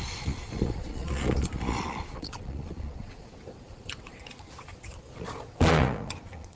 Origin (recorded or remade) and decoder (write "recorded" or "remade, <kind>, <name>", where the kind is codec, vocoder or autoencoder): remade, vocoder, Vocos